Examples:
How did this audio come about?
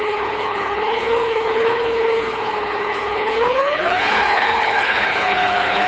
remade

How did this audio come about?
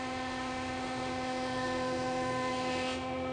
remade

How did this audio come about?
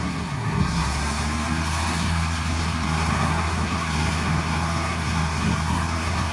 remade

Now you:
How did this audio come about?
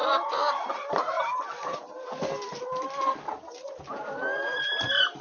recorded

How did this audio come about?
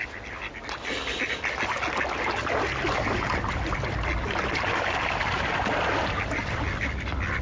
recorded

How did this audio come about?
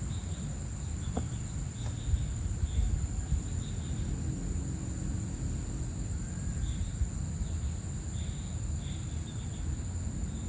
recorded